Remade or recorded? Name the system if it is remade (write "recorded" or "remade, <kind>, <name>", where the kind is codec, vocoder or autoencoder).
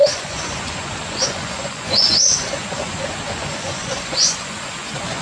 remade, vocoder, Vocos